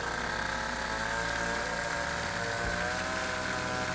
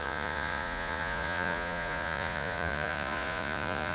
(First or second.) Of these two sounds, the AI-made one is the second